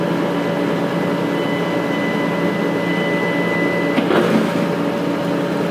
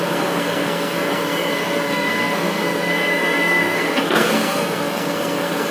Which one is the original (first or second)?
first